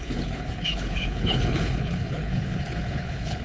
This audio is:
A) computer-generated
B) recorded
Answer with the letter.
A